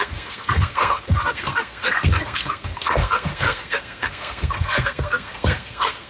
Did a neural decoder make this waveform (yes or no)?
yes